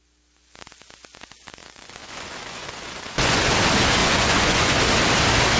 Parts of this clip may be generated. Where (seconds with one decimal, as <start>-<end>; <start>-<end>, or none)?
1.6-3.5; 4.0-4.8